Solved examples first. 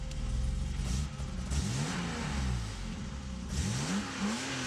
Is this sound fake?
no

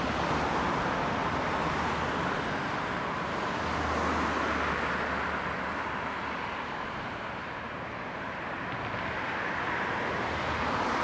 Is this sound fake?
no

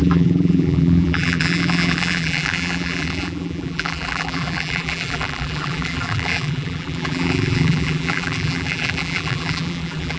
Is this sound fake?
yes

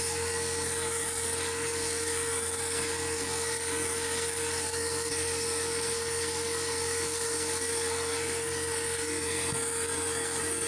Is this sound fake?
yes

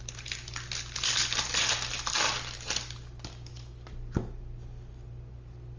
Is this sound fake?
no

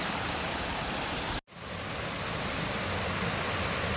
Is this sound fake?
no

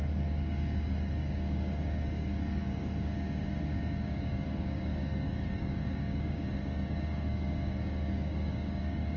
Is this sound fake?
yes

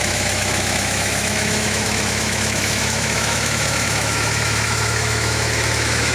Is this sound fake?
yes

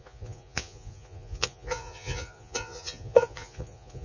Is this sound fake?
yes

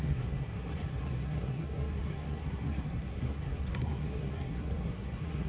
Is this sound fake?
yes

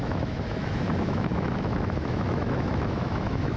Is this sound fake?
yes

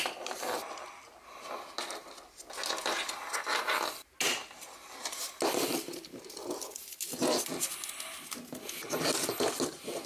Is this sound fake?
no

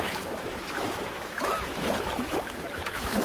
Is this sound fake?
yes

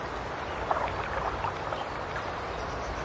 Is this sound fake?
no